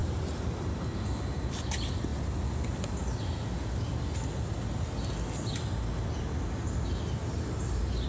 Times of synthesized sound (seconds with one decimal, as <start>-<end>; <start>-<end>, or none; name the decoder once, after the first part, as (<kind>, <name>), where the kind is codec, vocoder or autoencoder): 0.0-0.7 (vocoder, BigVGAN v2); 7.2-8.1